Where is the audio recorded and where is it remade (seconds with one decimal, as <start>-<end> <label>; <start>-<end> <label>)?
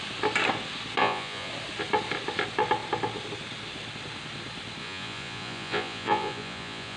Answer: 0.0-1.0 recorded; 1.0-1.5 remade; 1.5-4.8 recorded; 4.8-7.0 remade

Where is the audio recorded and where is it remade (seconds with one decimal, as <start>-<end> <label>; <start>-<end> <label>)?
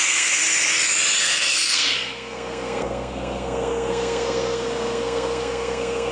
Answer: 0.0-0.4 remade; 0.4-1.2 recorded; 1.2-6.1 remade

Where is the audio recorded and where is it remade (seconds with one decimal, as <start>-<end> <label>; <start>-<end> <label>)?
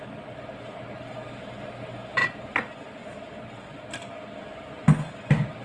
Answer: 0.0-5.6 recorded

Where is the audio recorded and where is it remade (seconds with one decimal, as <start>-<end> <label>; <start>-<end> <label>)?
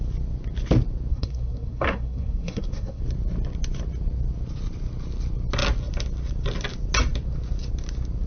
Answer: 0.0-1.1 recorded; 1.1-3.0 remade; 3.0-8.3 recorded